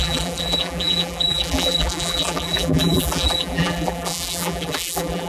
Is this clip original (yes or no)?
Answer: no